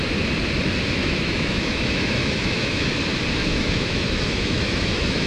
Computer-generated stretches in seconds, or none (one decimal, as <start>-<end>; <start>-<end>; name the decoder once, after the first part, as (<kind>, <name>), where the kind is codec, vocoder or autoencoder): 1.0-3.0 (autoencoder, DAC-VAE); 3.4-5.3